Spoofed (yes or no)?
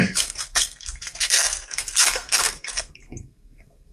yes